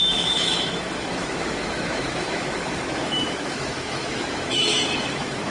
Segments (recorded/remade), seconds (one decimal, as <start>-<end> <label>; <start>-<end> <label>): 0.0-5.5 remade